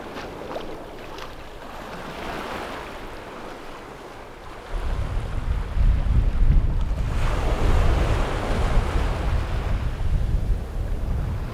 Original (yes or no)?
yes